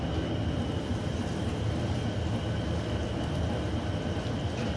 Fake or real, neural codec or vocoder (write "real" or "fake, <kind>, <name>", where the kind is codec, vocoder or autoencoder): real